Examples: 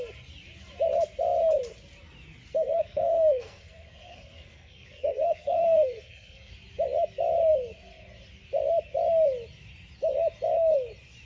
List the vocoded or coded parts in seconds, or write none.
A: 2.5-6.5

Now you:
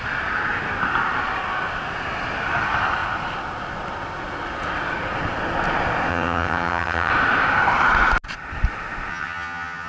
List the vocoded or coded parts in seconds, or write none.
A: 6.1-7.1; 9.1-9.9

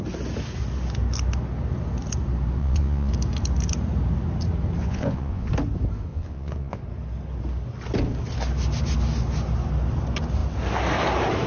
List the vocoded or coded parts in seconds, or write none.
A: 2.6-3.1; 4.8-5.5; 6.1-6.8